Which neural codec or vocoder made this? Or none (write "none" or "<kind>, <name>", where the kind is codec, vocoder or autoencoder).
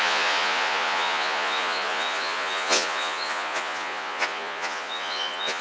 vocoder, Vocos